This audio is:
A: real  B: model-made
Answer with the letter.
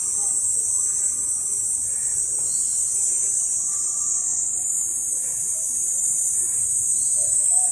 A